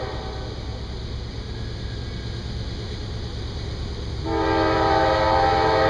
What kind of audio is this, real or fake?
real